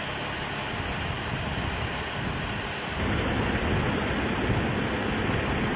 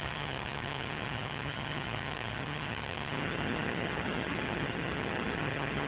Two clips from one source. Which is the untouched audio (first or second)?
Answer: first